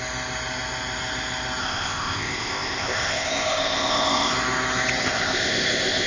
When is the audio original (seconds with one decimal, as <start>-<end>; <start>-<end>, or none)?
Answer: 0.0-1.6; 4.3-5.0